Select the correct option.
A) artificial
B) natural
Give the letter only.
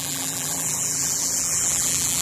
A